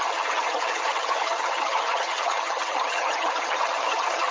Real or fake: fake